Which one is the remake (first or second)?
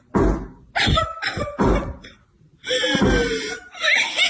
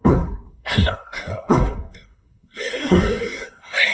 second